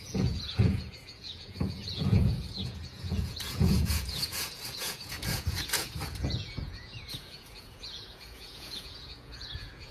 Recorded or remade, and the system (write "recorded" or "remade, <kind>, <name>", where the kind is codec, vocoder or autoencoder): remade, vocoder, Vocos